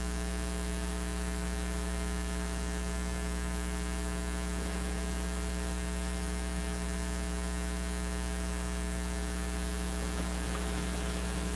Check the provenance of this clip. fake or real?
fake